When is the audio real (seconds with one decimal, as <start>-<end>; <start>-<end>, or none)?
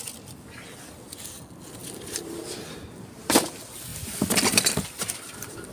0.0-1.8; 3.5-3.9